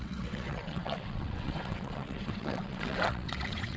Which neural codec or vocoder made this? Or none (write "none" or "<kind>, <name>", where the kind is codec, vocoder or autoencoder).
vocoder, WaveNeXt